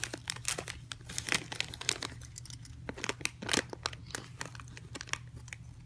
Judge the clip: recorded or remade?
recorded